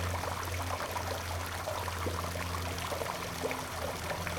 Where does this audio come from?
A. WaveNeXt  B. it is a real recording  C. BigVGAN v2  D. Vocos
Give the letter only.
B